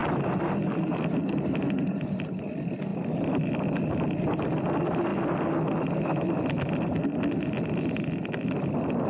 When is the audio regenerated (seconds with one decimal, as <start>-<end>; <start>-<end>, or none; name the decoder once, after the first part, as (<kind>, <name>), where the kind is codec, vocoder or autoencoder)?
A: none

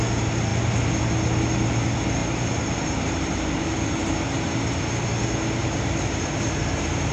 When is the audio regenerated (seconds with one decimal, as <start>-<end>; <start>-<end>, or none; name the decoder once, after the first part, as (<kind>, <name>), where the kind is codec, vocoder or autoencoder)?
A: 2.2-4.8 (vocoder, BigVGAN v2); 5.6-7.1

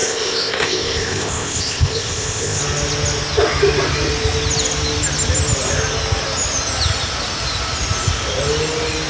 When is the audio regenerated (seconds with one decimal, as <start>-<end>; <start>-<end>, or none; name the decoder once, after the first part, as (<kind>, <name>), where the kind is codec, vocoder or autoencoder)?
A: 0.0-2.6 (codec, ZipCodec)

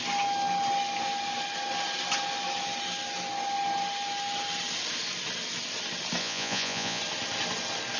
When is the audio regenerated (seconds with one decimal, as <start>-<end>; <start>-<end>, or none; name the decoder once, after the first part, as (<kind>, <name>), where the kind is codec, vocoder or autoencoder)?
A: 6.2-7.0 (vocoder, Vocos)

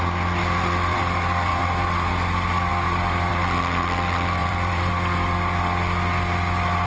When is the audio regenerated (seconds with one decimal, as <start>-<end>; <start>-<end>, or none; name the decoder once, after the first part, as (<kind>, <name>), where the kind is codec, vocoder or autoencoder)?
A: 0.4-1.0 (vocoder, BigVGAN v2); 1.5-2.1; 4.4-4.9